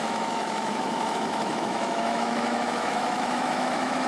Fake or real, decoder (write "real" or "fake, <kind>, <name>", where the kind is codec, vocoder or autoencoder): fake, autoencoder, DAC-VAE